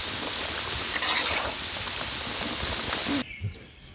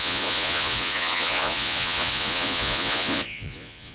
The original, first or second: first